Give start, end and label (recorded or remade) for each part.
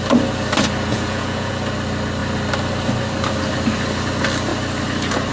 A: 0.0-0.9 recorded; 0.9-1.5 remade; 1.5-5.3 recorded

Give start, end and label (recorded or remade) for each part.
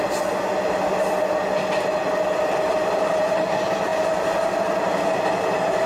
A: 0.0-5.9 recorded